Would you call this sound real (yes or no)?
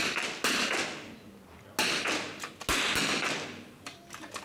yes